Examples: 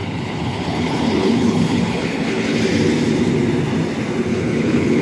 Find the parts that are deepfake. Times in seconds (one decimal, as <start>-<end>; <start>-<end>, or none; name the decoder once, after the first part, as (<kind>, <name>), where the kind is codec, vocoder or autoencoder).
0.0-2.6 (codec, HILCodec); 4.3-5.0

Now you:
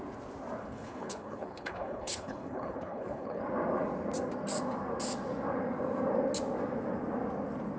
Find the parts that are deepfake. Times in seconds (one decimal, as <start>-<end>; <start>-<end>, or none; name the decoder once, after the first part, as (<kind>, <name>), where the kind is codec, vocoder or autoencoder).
0.6-3.4 (codec, HILCodec)

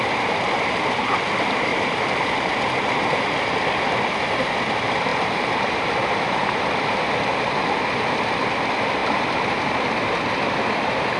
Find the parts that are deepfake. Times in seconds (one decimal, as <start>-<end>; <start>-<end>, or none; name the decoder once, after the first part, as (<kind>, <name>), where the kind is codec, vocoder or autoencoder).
none

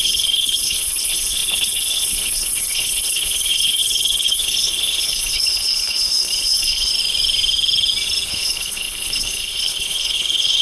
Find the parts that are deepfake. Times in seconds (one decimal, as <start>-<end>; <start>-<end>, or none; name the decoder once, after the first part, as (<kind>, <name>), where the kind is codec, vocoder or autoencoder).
0.0-6.9 (codec, HILCodec); 8.3-10.6